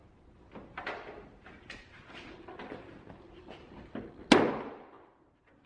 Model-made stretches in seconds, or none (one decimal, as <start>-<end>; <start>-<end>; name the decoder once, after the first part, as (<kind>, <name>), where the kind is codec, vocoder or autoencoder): none